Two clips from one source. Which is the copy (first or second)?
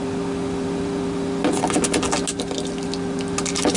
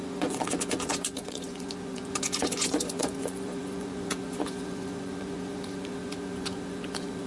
second